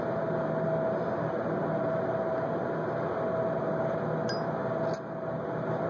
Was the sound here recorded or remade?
recorded